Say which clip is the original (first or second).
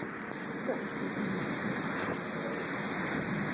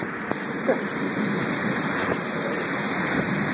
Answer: first